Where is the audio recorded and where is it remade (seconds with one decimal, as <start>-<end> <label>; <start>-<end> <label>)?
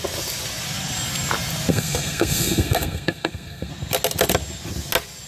0.0-1.7 recorded; 1.7-3.7 remade; 3.7-5.3 recorded